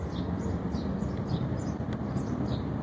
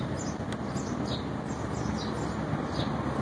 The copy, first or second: first